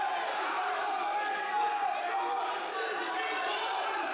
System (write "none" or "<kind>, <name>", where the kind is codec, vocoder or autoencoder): none